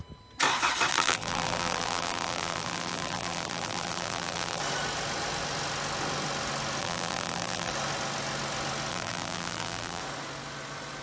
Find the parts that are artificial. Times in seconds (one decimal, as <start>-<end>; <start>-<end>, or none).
0.9-4.6; 6.8-7.7; 8.9-10.0